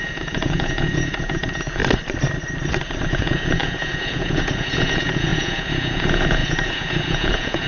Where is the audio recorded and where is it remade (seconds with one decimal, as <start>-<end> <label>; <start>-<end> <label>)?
0.0-1.8 remade; 1.8-3.1 recorded; 3.1-7.7 remade